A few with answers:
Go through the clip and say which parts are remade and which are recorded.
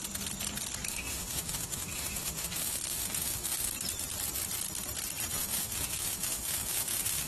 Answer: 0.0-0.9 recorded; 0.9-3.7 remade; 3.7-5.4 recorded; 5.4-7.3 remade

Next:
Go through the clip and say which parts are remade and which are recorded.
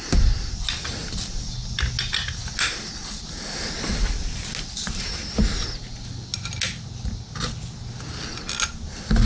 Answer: 0.0-9.2 recorded